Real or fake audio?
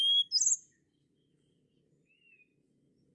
real